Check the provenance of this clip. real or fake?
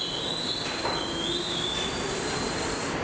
real